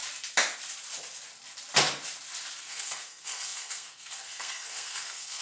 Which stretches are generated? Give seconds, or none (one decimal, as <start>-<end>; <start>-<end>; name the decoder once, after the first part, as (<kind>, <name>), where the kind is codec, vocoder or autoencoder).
2.6-5.4 (codec, SNAC)